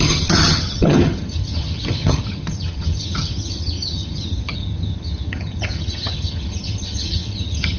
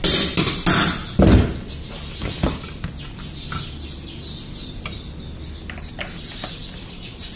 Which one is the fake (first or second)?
first